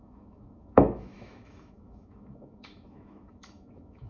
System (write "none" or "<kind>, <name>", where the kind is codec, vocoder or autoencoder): autoencoder, DAC-VAE